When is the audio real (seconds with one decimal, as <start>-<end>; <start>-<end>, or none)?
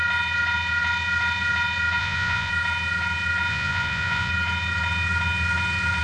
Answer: 0.0-2.0; 2.5-3.5; 4.3-6.0